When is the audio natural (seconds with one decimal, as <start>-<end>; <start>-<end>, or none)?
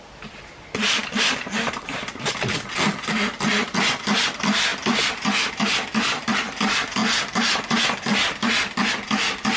0.0-9.6